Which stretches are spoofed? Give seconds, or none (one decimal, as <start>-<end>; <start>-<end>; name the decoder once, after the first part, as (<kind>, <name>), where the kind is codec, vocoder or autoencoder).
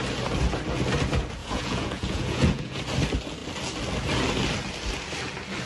1.4-2.8 (vocoder, Vocos)